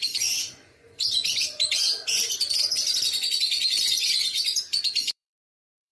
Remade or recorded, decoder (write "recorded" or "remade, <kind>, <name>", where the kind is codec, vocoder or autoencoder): remade, vocoder, Vocos